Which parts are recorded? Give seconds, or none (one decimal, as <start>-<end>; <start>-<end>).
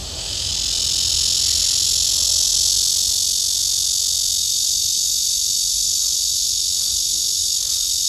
0.5-4.4